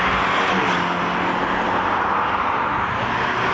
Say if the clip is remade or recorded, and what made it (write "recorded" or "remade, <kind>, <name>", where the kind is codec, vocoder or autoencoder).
recorded